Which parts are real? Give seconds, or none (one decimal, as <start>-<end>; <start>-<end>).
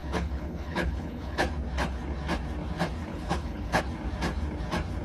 1.4-3.1; 3.8-5.0